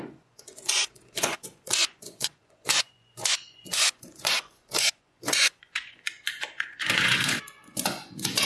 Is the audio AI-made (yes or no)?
yes